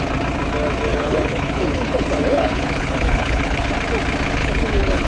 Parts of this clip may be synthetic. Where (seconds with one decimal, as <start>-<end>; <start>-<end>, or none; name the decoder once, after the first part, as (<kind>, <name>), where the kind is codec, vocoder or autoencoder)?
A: 0.9-3.7 (codec, HILCodec); 4.4-5.1